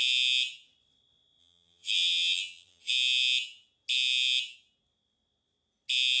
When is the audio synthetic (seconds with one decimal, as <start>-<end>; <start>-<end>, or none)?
1.4-2.9